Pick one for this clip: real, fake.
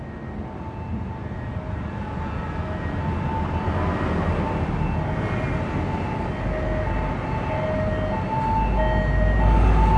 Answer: real